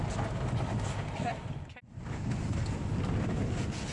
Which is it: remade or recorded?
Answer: recorded